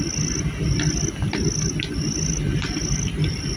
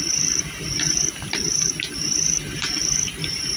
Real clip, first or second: first